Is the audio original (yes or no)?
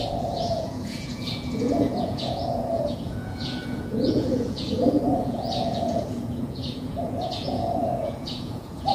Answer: no